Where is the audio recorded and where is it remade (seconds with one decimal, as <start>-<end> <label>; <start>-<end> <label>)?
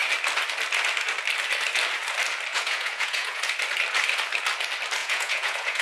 0.0-2.5 recorded; 2.5-3.4 remade; 3.4-5.0 recorded; 5.0-5.8 remade